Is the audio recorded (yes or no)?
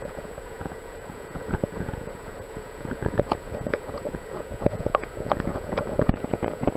no